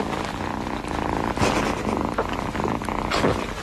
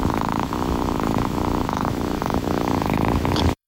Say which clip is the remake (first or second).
second